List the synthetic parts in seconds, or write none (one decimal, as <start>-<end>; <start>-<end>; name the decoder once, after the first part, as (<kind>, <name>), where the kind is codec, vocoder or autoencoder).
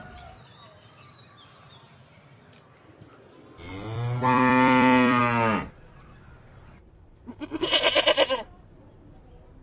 0.5-5.2 (vocoder, BigVGAN v2); 6.8-8.9